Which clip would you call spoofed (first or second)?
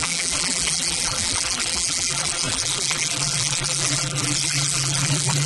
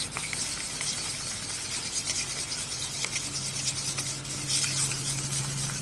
first